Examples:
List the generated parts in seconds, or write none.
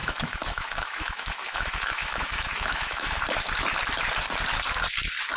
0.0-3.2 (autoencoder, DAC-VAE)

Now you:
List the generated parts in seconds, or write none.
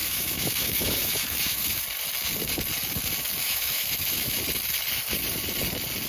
0.0-1.8 (autoencoder, DAC-VAE); 3.4-4.4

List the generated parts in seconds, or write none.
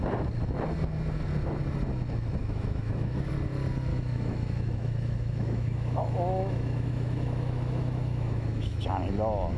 2.4-3.3 (autoencoder, DAC-VAE); 3.9-8.8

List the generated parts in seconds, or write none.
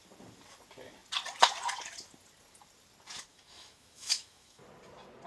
3.3-4.6 (autoencoder, DAC-VAE)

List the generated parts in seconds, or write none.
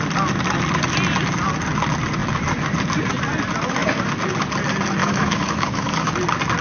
5.0-6.1 (autoencoder, DAC-VAE)